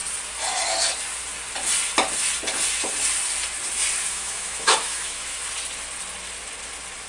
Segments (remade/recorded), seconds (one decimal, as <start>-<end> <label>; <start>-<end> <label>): 0.0-4.1 recorded; 4.1-5.4 remade; 5.4-7.1 recorded